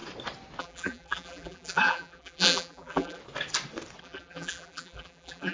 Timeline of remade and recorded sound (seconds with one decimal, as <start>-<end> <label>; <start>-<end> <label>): 0.0-0.6 recorded; 0.6-3.2 remade; 3.2-4.0 recorded; 4.0-5.5 remade